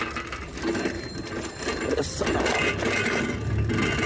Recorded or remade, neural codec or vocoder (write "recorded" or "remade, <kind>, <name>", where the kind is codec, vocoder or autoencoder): recorded